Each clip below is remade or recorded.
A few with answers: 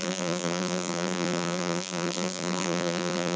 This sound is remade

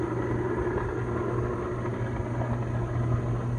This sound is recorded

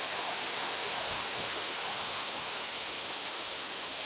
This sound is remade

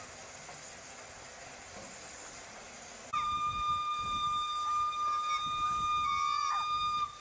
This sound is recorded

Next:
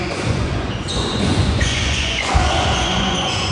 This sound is remade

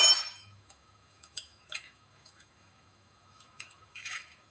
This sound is remade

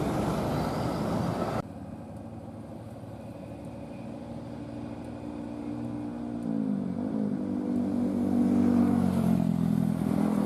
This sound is recorded